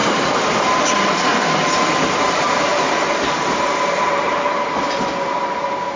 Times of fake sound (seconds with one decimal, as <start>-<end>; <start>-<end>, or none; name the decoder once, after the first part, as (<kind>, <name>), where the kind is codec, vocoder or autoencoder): none